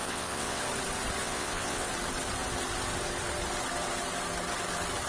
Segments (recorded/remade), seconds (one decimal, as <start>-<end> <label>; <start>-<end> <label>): 0.0-0.6 remade; 0.6-1.2 recorded; 1.2-1.9 remade; 1.9-5.1 recorded

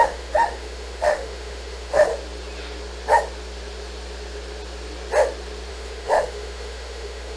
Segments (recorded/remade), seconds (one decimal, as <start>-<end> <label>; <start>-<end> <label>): 0.0-2.1 remade; 2.1-5.7 recorded; 5.7-7.4 remade